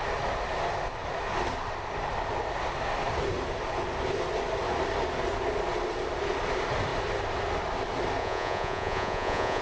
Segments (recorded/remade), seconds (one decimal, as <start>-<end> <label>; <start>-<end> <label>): 0.0-8.2 recorded; 8.2-9.6 remade